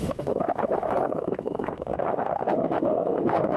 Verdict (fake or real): fake